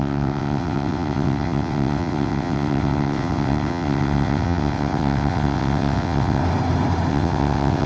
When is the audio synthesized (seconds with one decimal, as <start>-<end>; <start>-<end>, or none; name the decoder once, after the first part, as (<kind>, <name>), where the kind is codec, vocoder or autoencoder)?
0.0-6.4 (vocoder, WaveNeXt); 7.1-7.9